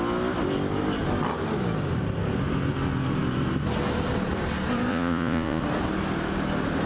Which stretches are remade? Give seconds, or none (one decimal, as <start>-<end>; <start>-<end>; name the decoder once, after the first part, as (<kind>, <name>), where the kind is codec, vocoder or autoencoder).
4.9-5.6 (vocoder, Vocos)